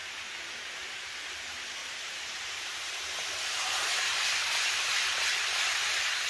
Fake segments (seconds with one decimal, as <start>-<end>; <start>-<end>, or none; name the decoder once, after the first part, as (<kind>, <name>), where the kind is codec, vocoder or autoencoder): 1.8-2.8 (vocoder, BigVGAN v2); 3.2-5.0